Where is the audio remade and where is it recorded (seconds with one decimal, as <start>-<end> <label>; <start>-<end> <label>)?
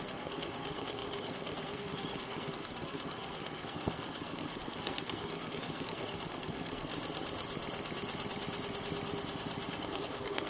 0.0-6.9 remade; 6.9-9.8 recorded; 9.8-10.5 remade